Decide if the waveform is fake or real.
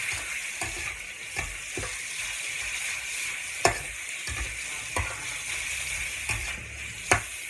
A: real